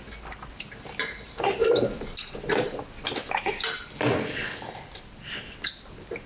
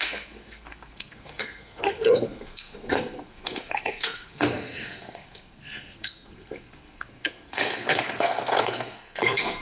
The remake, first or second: second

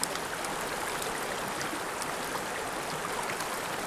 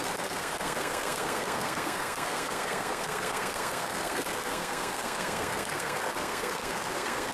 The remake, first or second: second